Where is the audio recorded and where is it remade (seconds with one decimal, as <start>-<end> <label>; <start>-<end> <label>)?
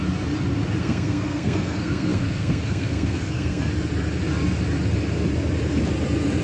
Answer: 0.0-0.8 recorded; 0.8-3.7 remade; 3.7-6.4 recorded